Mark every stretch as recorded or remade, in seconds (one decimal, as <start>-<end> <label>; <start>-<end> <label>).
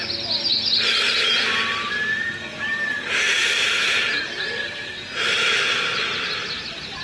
0.0-3.4 recorded; 3.4-4.9 remade; 4.9-7.0 recorded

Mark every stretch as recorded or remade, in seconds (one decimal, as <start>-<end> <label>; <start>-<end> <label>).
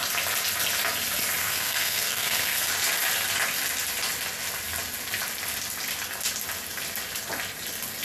0.0-1.4 recorded; 1.4-2.6 remade; 2.6-8.0 recorded